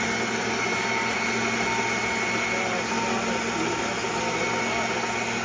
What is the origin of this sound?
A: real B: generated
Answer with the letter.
A